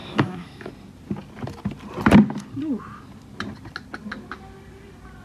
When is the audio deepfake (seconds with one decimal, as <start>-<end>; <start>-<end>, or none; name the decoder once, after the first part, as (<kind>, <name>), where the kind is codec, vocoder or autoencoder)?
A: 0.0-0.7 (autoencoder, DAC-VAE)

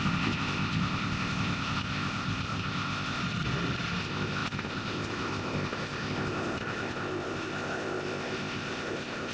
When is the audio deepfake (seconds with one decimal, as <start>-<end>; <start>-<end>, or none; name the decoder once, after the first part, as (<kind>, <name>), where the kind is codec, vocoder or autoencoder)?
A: 0.0-3.2 (codec, ZipCodec); 4.0-9.3

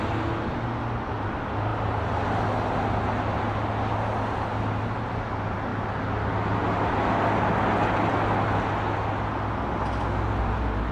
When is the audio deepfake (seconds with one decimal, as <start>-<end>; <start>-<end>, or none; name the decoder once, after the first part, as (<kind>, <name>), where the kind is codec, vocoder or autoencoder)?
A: none